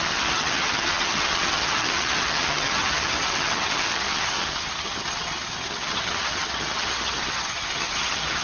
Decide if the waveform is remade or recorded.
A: remade